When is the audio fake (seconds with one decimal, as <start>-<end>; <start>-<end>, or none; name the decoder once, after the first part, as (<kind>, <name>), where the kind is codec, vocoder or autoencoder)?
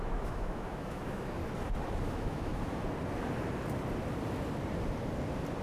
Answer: 0.0-1.4 (autoencoder, DAC-VAE); 2.0-2.5